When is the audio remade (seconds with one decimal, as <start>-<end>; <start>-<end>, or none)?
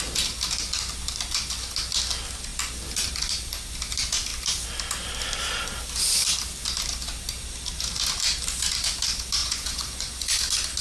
9.4-10.4